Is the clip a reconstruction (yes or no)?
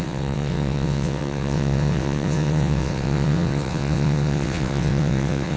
yes